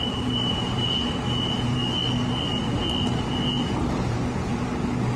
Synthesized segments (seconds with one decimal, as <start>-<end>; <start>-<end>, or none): 0.0-1.8; 3.8-4.5